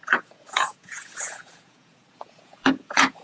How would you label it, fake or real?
fake